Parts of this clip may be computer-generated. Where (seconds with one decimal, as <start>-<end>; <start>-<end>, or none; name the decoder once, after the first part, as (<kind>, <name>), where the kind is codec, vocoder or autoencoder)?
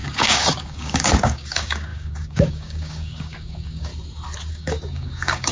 0.0-3.9 (codec, DAC); 4.5-5.5